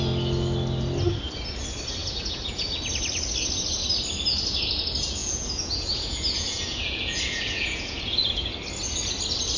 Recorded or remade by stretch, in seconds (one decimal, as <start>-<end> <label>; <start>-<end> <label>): 0.0-2.0 recorded; 2.0-2.6 remade; 2.6-5.2 recorded; 5.2-8.5 remade; 8.5-9.6 recorded